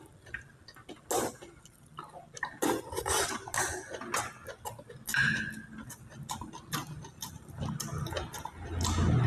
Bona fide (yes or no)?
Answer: yes